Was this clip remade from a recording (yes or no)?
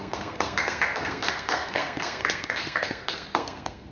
yes